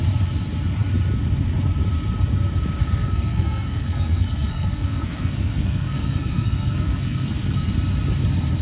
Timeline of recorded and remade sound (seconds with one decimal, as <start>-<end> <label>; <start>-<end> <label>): 0.0-2.8 recorded; 2.8-7.7 remade; 7.7-8.6 recorded